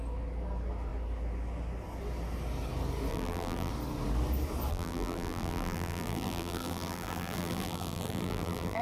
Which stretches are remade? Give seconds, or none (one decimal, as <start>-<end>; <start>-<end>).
3.1-3.7; 4.7-8.8